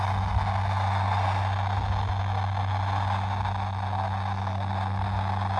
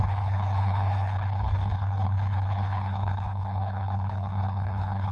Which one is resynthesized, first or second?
second